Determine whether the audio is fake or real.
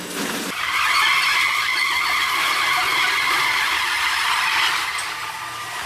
real